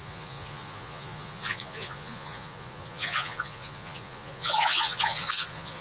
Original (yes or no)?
no